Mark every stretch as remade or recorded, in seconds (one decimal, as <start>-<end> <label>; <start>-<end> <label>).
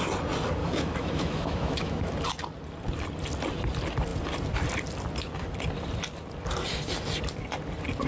0.0-0.6 recorded; 0.6-2.1 remade; 2.1-8.1 recorded